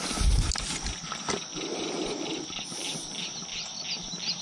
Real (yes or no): yes